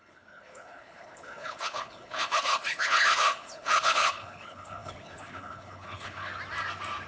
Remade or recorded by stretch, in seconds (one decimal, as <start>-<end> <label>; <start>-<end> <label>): 0.0-6.3 remade; 6.3-7.1 recorded